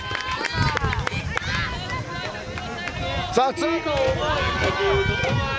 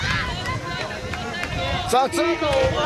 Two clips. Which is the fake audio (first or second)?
second